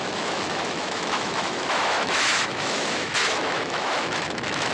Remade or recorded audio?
remade